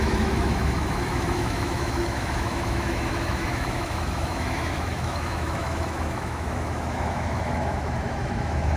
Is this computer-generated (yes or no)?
yes